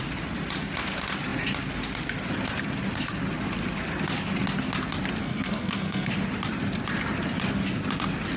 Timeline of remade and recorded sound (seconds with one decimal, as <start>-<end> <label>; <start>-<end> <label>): 0.0-5.2 recorded; 5.2-6.1 remade; 6.1-8.4 recorded